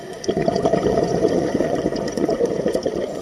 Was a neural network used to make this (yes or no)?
yes